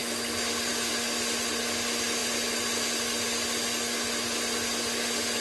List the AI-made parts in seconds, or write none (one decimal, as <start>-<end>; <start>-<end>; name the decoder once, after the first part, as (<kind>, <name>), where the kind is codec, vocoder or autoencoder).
none